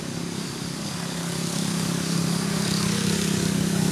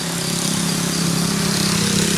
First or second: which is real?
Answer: second